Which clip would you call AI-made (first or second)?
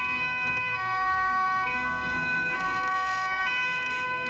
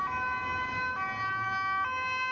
first